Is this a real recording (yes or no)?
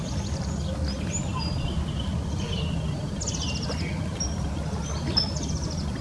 yes